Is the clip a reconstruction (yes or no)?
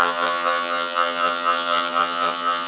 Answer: yes